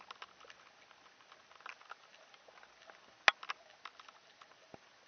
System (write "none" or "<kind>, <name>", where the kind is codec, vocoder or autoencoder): none